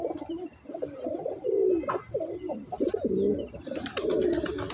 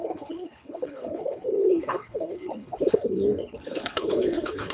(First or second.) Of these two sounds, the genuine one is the first